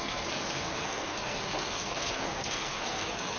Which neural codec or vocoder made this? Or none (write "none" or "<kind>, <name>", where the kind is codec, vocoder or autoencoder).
codec, SNAC